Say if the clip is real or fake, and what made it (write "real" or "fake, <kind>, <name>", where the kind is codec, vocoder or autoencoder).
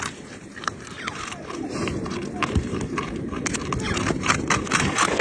fake, vocoder, BigVGAN v2